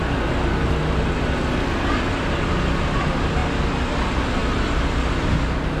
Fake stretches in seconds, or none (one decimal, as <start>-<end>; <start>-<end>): none